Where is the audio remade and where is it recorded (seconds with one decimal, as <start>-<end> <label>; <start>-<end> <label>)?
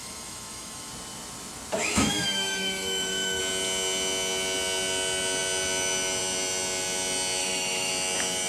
0.0-0.9 remade; 0.9-1.8 recorded; 1.8-3.4 remade; 3.4-7.4 recorded; 7.4-7.9 remade; 7.9-8.5 recorded